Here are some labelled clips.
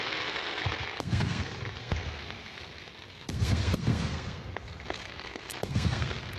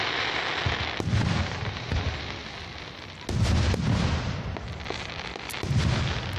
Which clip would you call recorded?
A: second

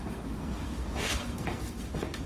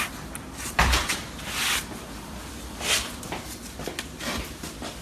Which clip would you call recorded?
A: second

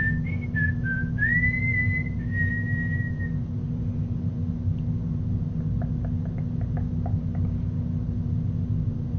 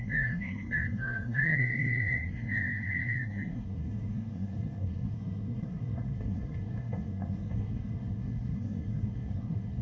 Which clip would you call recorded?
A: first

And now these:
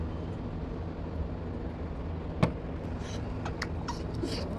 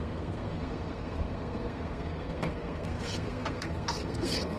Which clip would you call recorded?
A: first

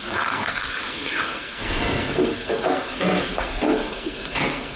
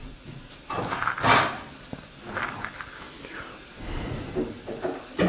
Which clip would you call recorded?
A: second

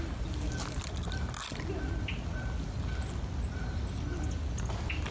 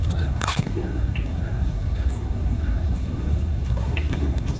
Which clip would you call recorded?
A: first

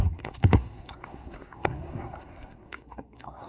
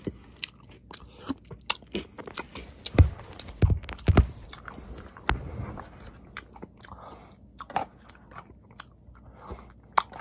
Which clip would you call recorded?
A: second